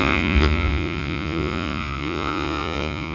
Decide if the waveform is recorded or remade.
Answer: remade